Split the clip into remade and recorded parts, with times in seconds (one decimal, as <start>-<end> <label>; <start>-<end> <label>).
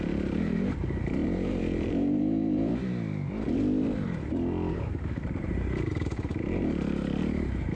0.0-2.7 remade; 2.7-4.7 recorded; 4.7-7.8 remade